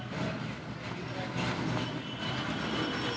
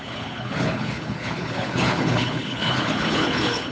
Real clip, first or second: first